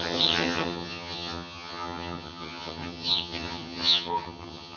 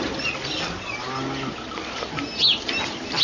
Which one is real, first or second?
second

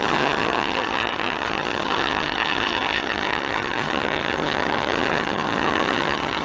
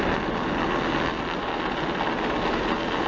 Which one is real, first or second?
second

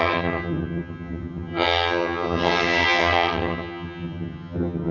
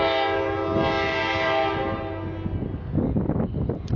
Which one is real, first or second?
second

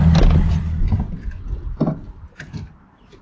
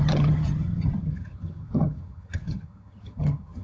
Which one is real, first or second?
first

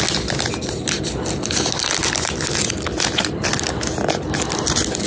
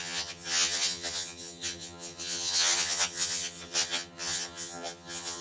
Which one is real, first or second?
first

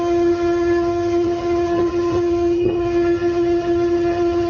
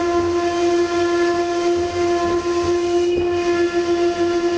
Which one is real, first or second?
second